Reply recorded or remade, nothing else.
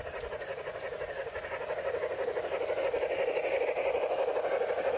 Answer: recorded